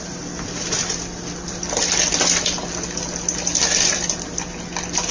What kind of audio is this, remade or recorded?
recorded